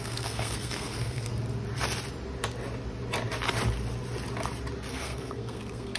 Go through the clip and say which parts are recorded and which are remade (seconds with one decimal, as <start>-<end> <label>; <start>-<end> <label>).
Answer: 0.0-1.3 remade; 1.3-4.9 recorded; 4.9-6.0 remade